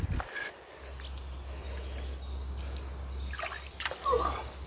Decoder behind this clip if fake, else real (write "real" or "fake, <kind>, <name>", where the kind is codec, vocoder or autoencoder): real